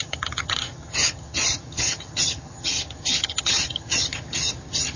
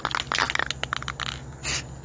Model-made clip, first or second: first